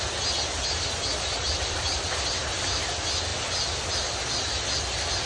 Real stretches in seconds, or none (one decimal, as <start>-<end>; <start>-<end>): 0.0-5.3